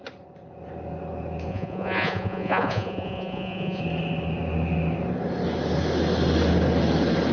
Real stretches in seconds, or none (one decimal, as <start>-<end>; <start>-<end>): 0.0-1.5; 3.8-7.3